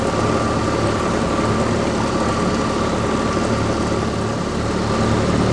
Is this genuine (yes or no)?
yes